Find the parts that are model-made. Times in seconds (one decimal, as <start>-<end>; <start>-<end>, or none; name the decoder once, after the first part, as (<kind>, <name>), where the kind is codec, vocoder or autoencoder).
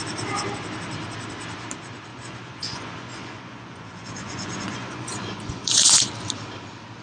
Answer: 2.1-6.1 (vocoder, Vocos)